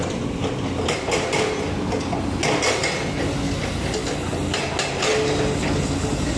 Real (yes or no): yes